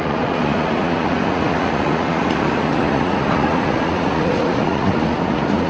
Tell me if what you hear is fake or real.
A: fake